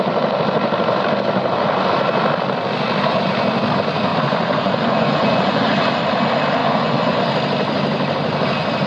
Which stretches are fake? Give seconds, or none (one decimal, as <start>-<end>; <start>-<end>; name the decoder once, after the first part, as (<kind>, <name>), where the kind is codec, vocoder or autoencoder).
4.1-5.9 (vocoder, Vocos); 6.6-7.2